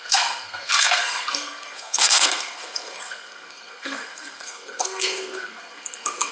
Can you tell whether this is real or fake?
fake